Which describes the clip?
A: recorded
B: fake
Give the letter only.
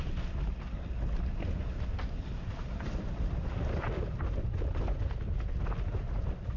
A